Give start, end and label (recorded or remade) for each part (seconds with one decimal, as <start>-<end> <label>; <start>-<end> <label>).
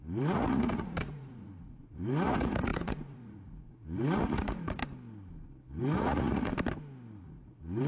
0.0-4.8 remade; 4.8-5.8 recorded; 5.8-6.5 remade; 6.5-7.2 recorded; 7.2-7.9 remade